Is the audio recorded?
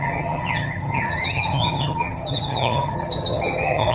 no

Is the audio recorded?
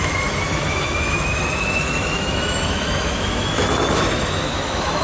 no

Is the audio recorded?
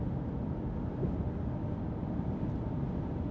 yes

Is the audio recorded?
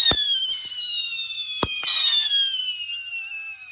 yes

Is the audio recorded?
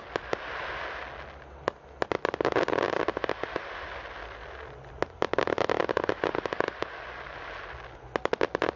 yes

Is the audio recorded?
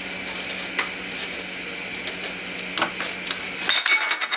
yes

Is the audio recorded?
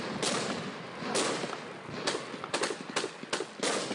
yes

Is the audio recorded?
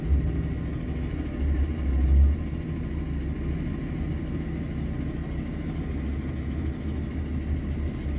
yes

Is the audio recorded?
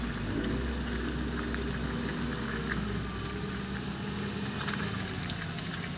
yes